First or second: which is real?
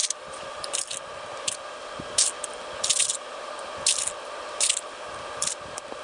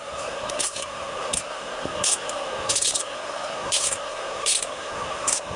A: first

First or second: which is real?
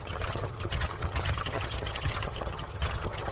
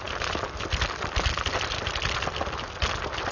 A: second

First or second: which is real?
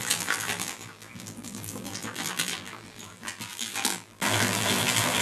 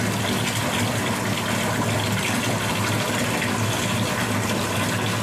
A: second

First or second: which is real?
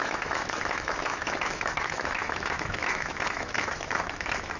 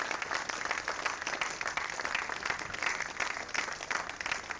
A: second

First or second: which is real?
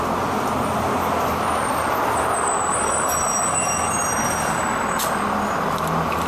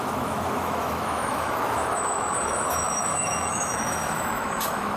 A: first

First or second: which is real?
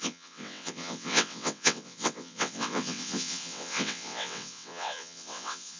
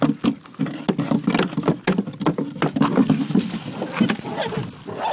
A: second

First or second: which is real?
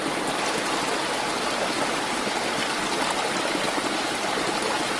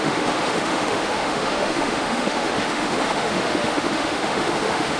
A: first